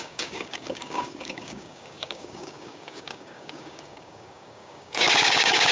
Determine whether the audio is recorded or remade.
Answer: remade